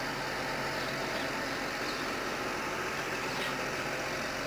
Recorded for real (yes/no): yes